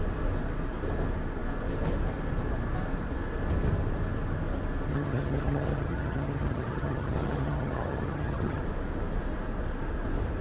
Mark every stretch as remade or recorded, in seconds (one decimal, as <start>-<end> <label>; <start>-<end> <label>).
0.0-4.9 recorded; 4.9-8.6 remade; 8.6-10.4 recorded